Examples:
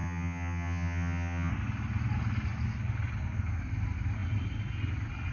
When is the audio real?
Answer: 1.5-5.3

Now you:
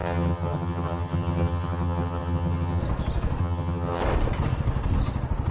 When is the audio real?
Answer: 2.8-3.4; 4.0-5.5

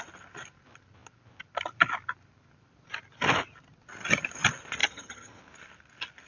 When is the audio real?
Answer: 0.0-4.8; 5.4-6.3

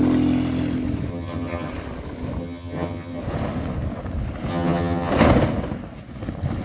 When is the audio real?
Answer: 0.0-1.1; 1.7-2.4; 3.2-4.5; 5.1-6.6

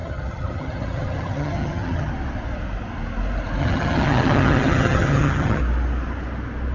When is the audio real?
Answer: 2.1-3.6; 5.6-6.7

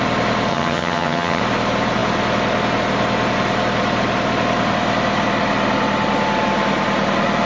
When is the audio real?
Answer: 0.0-0.5; 1.4-7.4

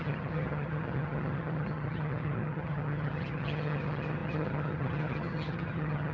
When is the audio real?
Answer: none